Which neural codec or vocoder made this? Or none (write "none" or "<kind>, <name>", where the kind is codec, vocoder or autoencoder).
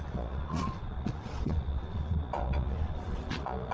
vocoder, Vocos